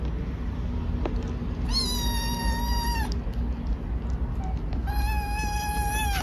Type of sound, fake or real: real